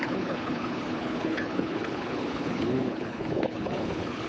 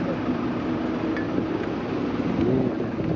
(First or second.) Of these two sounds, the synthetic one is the first